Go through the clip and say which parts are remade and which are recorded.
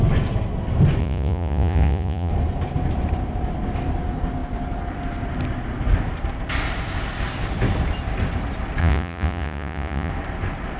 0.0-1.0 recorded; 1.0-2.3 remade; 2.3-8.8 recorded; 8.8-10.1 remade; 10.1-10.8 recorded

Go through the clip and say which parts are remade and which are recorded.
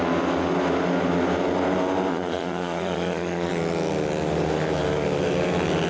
0.0-2.1 recorded; 2.1-3.5 remade; 3.5-5.9 recorded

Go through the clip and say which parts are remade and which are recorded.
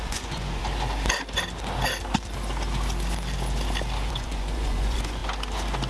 0.0-0.6 remade; 0.6-4.1 recorded; 4.1-5.2 remade; 5.2-5.9 recorded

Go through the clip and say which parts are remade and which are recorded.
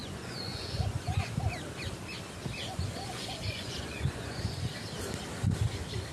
0.0-1.3 remade; 1.3-2.6 recorded; 2.6-4.7 remade; 4.7-6.1 recorded